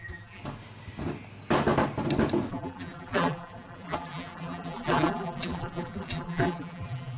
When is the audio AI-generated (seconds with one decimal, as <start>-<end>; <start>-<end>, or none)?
0.0-0.4; 2.5-7.2